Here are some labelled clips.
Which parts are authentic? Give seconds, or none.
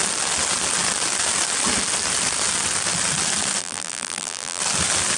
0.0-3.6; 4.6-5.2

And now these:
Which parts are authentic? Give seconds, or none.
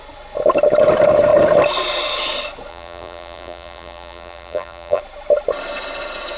0.0-2.7; 5.0-6.4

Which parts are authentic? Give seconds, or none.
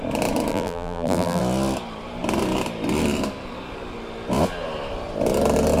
0.0-0.5; 1.4-5.8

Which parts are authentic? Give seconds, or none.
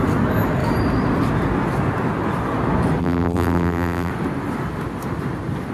0.0-3.0; 4.1-5.7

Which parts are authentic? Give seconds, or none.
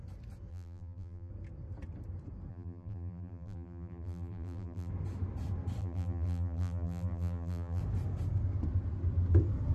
0.0-0.5; 1.3-2.5; 4.9-5.8; 7.8-9.7